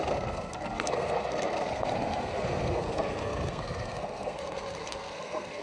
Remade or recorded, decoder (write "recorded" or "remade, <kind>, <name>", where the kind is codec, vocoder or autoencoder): remade, codec, SNAC